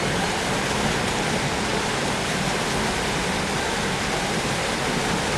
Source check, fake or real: real